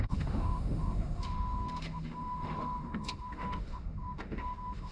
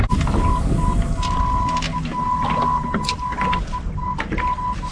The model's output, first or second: first